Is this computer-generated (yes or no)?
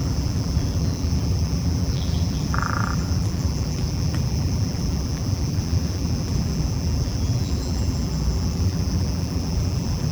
yes